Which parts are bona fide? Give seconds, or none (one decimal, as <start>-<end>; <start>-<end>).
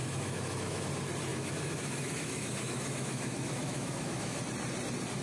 0.9-1.3; 4.4-5.2